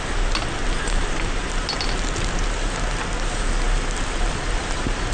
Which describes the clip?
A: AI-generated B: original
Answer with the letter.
B